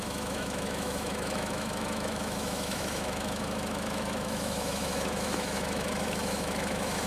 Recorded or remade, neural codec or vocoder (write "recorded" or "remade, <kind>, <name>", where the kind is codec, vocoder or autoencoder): remade, autoencoder, DAC-VAE